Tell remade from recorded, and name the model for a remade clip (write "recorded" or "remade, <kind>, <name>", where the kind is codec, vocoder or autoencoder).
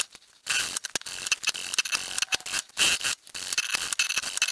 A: recorded